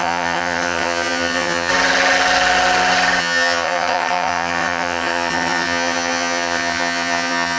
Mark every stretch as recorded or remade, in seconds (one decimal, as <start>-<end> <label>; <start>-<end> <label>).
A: 0.0-1.7 remade; 1.7-3.2 recorded; 3.2-7.6 remade